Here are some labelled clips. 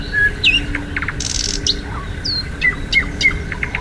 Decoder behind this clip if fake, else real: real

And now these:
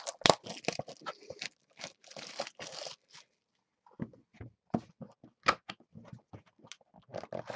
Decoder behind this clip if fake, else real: real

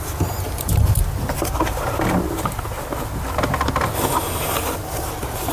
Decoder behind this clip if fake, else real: real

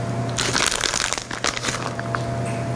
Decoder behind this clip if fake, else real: real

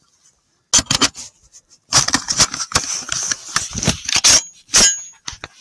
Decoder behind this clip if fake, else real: real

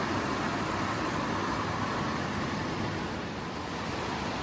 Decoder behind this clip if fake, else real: real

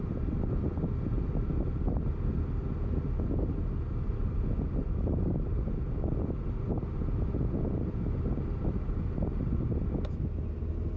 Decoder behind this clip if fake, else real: real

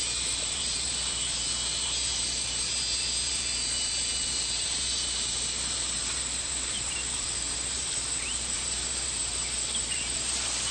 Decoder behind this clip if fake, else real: fake, vocoder, BigVGAN v2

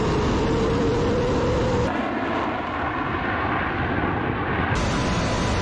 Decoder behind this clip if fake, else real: real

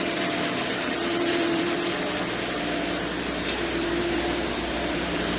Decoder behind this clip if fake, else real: fake, vocoder, BigVGAN v2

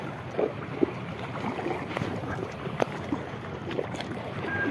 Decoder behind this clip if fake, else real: fake, vocoder, BigVGAN v2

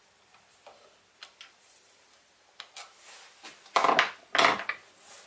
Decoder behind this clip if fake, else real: real